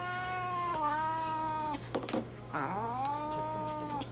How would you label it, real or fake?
fake